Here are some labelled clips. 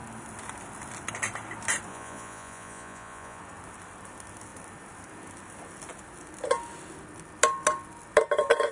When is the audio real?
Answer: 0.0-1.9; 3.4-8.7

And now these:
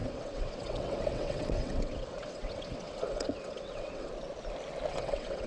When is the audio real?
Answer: 4.1-4.9

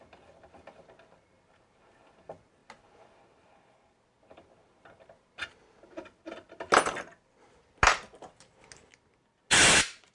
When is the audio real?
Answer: 0.0-10.1

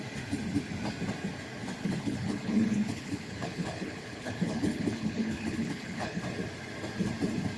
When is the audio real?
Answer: 0.0-1.8; 6.2-7.6

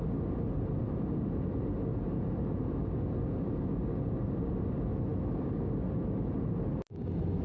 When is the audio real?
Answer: 0.0-7.4

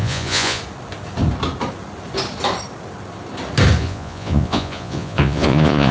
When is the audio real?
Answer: 0.6-3.8